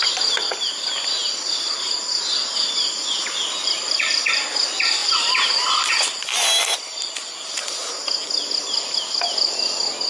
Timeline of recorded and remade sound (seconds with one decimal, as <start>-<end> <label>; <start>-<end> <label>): 0.0-3.2 recorded; 3.2-4.4 remade; 4.4-10.1 recorded